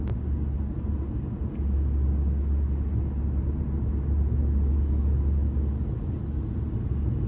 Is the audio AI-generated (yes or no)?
no